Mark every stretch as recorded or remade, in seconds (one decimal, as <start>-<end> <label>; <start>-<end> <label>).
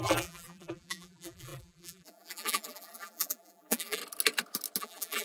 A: 0.0-4.0 remade; 4.0-4.8 recorded; 4.8-5.2 remade